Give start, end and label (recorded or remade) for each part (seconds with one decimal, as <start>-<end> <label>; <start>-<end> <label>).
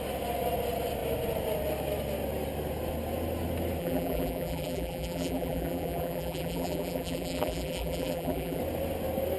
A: 0.0-3.8 recorded; 3.8-8.6 remade; 8.6-9.4 recorded